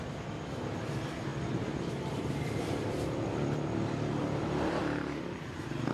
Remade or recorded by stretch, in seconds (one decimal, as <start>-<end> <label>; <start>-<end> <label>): 0.0-1.3 recorded; 1.3-4.8 remade; 4.8-5.9 recorded